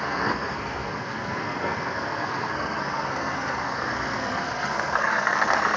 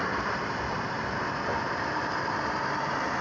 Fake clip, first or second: first